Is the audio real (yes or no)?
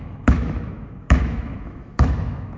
no